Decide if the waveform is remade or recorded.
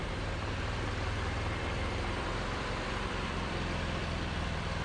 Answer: remade